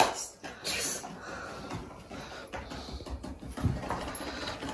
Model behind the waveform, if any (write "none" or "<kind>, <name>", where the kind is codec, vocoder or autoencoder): none